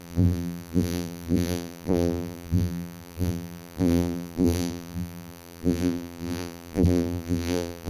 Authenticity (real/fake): fake